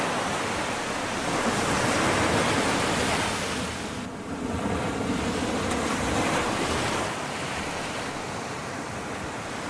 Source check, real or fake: real